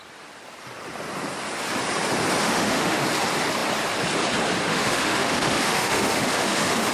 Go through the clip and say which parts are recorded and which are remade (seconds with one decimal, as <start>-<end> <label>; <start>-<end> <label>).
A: 0.0-2.4 recorded; 2.4-3.0 remade; 3.0-4.7 recorded; 4.7-6.9 remade